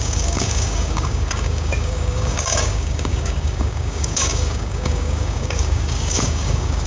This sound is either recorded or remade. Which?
remade